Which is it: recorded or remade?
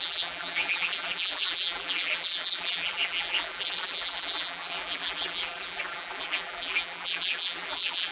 remade